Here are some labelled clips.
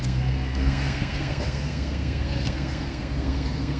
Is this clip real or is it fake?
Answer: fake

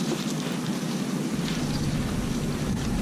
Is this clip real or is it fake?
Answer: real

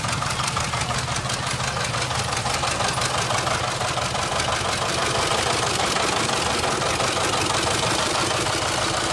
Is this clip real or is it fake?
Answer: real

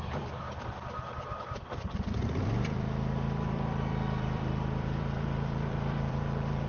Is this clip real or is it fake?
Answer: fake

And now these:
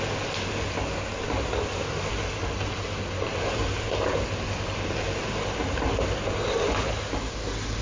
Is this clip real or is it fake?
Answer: real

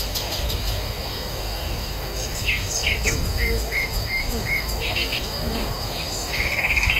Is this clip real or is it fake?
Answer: fake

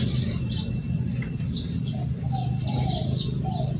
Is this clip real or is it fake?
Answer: real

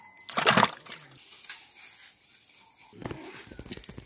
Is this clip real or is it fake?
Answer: real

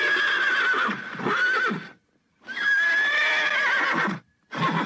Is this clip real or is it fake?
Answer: real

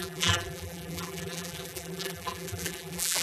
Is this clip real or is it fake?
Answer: fake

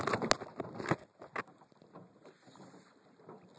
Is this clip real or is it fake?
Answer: real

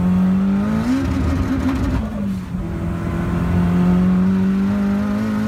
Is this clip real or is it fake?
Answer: real